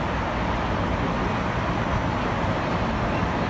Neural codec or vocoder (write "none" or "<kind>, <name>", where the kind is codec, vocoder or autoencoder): none